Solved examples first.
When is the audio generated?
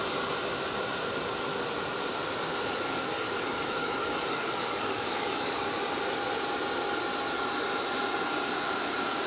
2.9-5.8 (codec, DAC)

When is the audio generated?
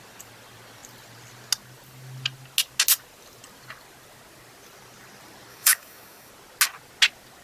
5.5-6.3 (codec, DAC)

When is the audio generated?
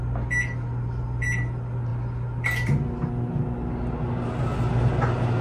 none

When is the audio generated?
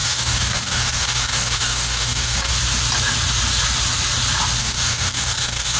0.0-2.5 (codec, DAC); 4.6-5.8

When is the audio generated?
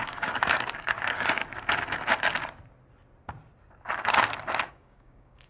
0.0-1.4 (codec, DAC); 4.7-5.5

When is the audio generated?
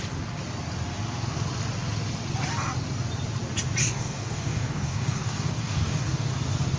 3.8-6.3 (codec, DAC)